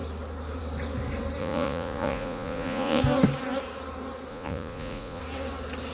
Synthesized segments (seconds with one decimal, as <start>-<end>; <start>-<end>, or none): 1.4-3.0; 4.3-5.2